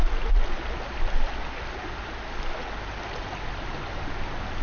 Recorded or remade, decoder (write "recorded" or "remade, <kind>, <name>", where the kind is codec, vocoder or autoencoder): recorded